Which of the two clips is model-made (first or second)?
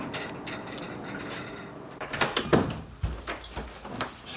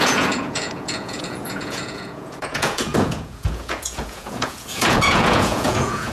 second